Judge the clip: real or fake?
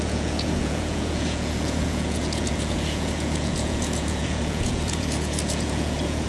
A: fake